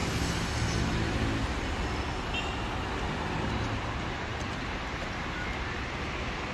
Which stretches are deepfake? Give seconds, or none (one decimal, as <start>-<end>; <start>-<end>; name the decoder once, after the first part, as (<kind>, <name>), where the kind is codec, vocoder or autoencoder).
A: none